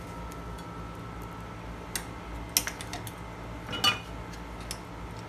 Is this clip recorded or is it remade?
recorded